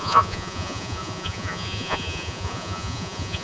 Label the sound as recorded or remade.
remade